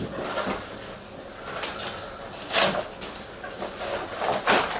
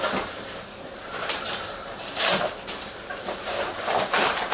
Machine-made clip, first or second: second